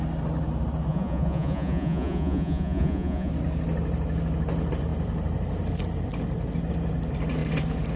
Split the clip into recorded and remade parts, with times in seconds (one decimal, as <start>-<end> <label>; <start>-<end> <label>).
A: 0.0-0.9 recorded; 0.9-3.3 remade; 3.3-8.0 recorded